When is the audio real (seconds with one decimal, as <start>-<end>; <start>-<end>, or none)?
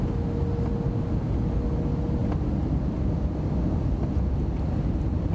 0.0-5.3